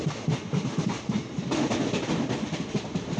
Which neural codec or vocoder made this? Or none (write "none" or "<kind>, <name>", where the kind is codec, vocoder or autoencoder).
none